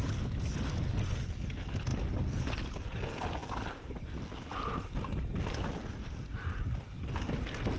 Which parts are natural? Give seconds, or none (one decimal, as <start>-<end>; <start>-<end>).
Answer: 0.0-3.4; 4.1-5.8; 6.9-7.8